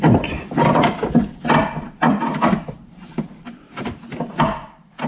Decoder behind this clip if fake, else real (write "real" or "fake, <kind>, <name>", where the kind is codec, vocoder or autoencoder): real